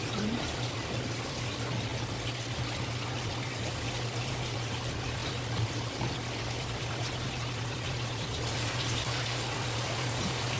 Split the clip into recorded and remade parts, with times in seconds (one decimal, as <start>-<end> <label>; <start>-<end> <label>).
0.0-1.9 remade; 1.9-3.5 recorded; 3.5-5.2 remade; 5.2-6.4 recorded; 6.4-10.6 remade